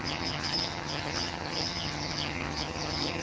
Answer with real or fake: fake